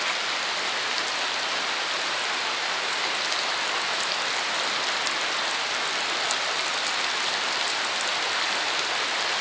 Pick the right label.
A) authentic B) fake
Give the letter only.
A